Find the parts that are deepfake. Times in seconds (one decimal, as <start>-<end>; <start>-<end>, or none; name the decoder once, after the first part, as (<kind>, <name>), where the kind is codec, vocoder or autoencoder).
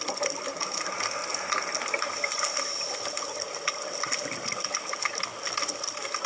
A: none